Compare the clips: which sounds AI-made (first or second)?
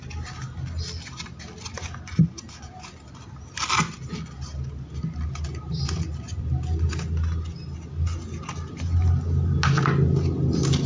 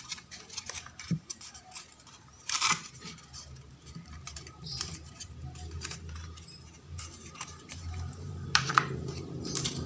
second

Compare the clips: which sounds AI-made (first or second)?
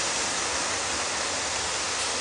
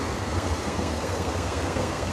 second